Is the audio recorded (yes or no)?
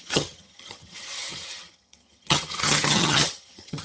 no